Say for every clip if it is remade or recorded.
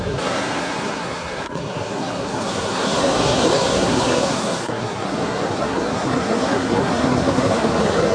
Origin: remade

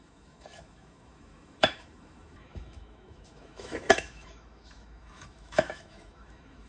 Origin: remade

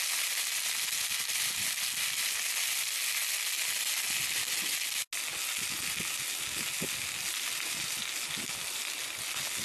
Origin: recorded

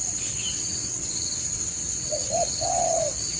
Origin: remade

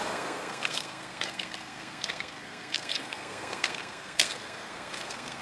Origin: remade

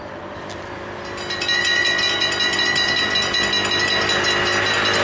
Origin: recorded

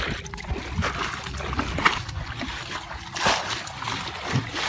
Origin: recorded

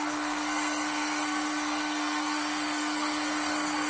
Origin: remade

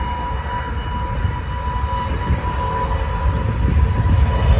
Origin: recorded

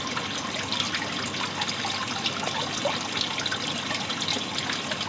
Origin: recorded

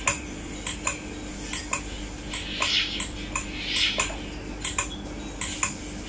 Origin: recorded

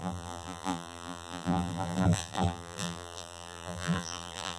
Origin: remade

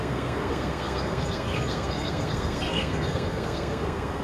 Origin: remade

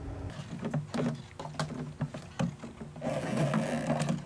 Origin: recorded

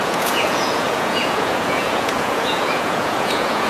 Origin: remade